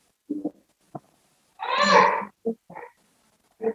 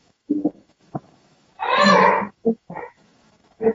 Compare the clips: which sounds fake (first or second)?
second